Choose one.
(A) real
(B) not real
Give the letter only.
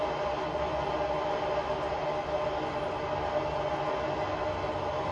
A